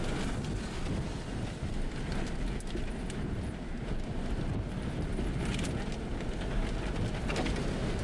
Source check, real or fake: real